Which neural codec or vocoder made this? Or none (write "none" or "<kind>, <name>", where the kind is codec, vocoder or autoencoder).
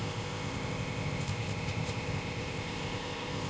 codec, ZipCodec